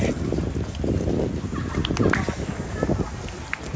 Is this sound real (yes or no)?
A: yes